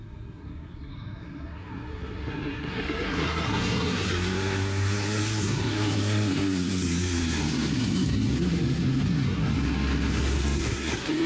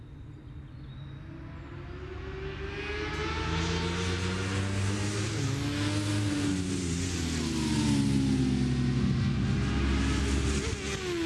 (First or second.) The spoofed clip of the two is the first